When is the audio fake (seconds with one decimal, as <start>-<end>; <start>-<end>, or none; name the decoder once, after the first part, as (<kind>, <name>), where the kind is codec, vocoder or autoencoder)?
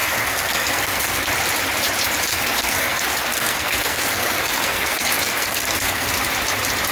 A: 0.0-1.3 (codec, SNAC); 2.3-6.1